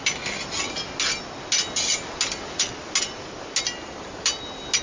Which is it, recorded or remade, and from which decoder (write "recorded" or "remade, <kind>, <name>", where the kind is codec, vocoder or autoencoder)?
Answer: recorded